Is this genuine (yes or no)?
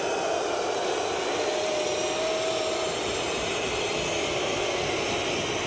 yes